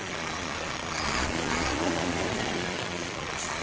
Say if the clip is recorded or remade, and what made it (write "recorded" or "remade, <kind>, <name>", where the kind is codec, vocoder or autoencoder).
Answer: remade, vocoder, Vocos